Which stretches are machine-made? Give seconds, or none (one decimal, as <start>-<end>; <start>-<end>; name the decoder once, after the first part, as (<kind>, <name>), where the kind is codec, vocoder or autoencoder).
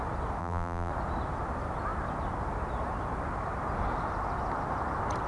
0.4-0.9 (vocoder, BigVGAN v2)